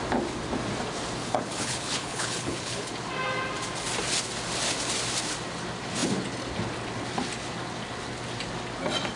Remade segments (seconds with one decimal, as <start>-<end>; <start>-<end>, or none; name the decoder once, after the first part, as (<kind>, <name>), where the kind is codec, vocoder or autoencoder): 1.2-2.9 (codec, HILCodec)